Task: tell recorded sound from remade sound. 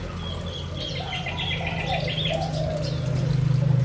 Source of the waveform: recorded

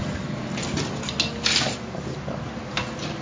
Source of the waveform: recorded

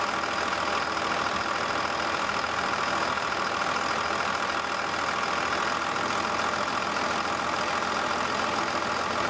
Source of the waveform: recorded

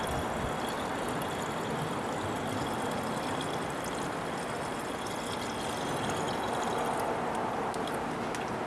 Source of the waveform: recorded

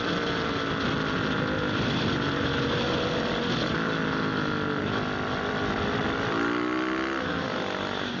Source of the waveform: recorded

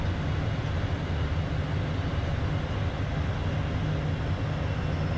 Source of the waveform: recorded